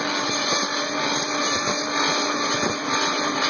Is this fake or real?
real